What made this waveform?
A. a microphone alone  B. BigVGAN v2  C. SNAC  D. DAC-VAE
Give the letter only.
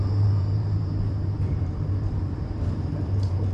B